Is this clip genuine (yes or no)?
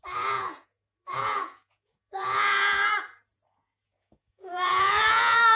no